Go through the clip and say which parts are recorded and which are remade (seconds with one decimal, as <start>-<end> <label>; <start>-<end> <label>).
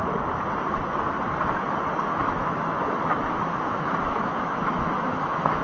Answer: 0.0-2.1 recorded; 2.1-5.6 remade